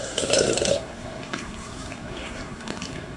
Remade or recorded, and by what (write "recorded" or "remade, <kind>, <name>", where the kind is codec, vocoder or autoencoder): remade, codec, SNAC